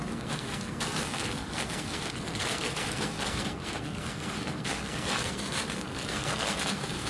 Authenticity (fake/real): fake